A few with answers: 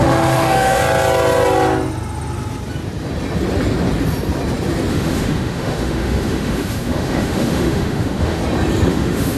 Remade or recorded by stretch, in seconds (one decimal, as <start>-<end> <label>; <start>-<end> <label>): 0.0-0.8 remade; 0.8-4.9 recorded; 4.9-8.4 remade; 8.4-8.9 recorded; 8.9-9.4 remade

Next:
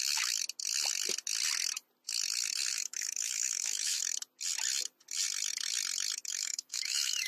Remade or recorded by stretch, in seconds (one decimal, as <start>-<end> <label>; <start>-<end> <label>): 0.0-2.7 recorded; 2.7-4.0 remade; 4.0-6.3 recorded; 6.3-7.3 remade

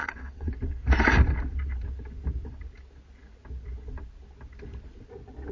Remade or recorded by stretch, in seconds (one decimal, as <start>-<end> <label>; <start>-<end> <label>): 0.0-0.5 remade; 0.5-5.5 recorded

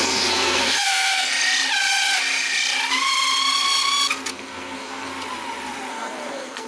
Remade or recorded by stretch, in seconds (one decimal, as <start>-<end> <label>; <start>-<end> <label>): 0.0-1.3 remade; 1.3-4.3 recorded; 4.3-5.1 remade; 5.1-5.9 recorded; 5.9-6.7 remade

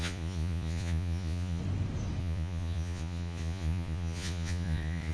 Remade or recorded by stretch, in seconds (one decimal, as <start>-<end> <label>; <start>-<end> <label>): 0.0-1.6 remade; 1.6-2.2 recorded; 2.2-5.1 remade

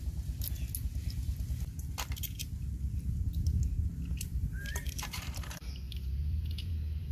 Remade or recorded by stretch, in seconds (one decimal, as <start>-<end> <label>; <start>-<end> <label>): 0.0-4.1 recorded; 4.1-7.1 remade

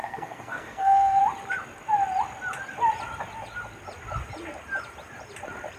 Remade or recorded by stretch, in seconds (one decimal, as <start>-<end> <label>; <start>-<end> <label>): 0.0-1.2 remade; 1.2-5.8 recorded

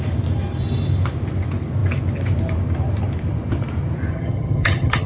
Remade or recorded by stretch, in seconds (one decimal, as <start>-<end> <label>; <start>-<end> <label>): 0.0-4.1 recorded; 4.1-5.1 remade